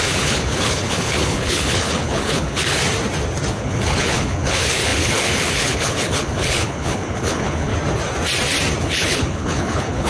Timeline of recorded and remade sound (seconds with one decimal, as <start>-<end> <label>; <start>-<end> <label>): 0.0-2.8 remade; 2.8-3.5 recorded; 3.5-7.7 remade; 7.7-8.8 recorded; 8.8-10.1 remade